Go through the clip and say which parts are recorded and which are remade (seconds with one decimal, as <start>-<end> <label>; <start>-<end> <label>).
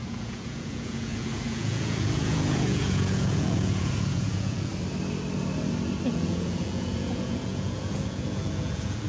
0.0-4.7 remade; 4.7-6.1 recorded; 6.1-9.1 remade